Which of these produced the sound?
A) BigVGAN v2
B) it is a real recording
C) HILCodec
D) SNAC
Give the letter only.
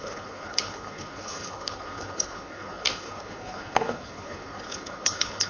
C